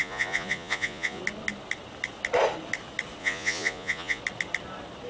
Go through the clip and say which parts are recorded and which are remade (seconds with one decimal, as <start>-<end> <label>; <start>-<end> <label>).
0.0-1.2 remade; 1.2-3.2 recorded; 3.2-4.2 remade; 4.2-5.1 recorded